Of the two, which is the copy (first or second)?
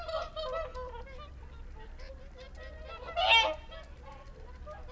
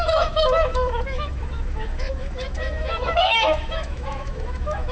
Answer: second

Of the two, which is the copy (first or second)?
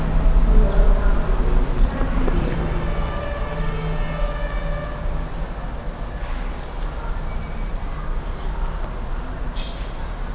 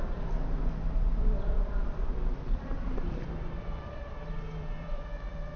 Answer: second